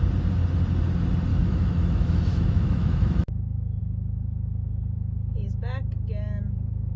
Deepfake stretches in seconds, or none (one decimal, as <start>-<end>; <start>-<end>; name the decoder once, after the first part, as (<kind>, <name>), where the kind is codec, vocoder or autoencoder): 1.3-3.8 (autoencoder, DAC-VAE)